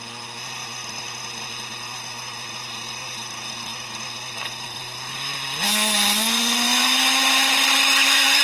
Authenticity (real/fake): real